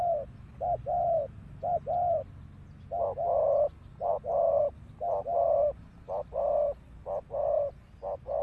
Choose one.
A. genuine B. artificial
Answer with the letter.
A